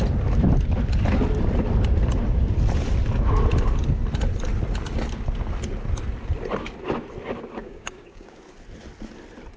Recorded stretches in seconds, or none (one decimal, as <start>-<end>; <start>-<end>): 0.0-7.6; 8.4-9.6